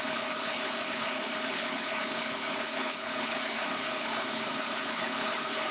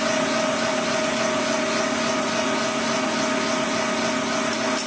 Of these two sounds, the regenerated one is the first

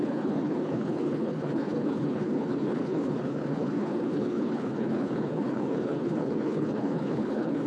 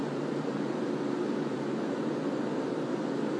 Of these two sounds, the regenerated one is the first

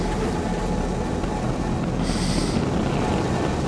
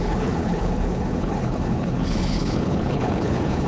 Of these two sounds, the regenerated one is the second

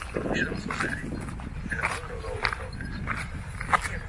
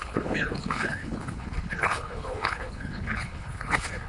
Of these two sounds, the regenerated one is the second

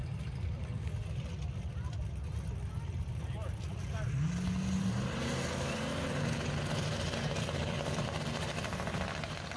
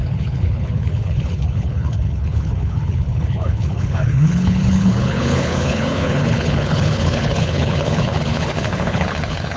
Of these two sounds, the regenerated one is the second